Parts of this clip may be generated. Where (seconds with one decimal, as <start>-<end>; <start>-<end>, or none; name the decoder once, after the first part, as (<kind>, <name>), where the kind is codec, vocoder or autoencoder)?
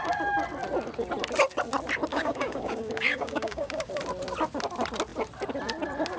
2.1-3.9 (codec, DAC)